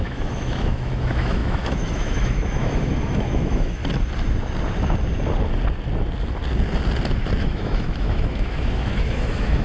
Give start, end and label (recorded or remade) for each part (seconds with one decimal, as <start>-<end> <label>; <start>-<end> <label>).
0.0-3.8 remade; 3.8-7.4 recorded; 7.4-9.6 remade

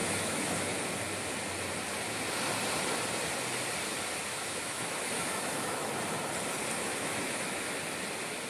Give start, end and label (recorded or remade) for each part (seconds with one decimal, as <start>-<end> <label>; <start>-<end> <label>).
0.0-0.8 remade; 0.8-4.3 recorded; 4.3-5.9 remade; 5.9-6.9 recorded; 6.9-7.7 remade; 7.7-8.5 recorded

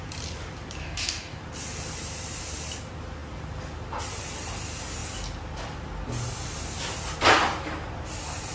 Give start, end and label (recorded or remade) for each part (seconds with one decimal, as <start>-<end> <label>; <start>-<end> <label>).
0.0-0.8 recorded; 0.8-1.4 remade; 1.4-8.5 recorded

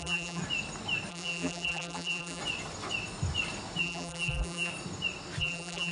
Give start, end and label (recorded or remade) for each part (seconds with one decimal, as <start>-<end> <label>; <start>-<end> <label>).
0.0-0.4 remade; 0.4-1.1 recorded; 1.1-2.4 remade; 2.4-3.8 recorded; 3.8-4.7 remade; 4.7-5.4 recorded; 5.4-5.9 remade